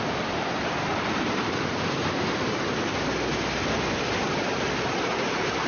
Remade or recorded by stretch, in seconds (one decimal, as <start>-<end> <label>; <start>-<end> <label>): 0.0-0.6 recorded; 0.6-3.5 remade; 3.5-5.7 recorded